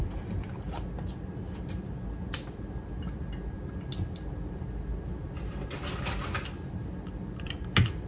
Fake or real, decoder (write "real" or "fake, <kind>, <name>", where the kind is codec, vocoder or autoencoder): real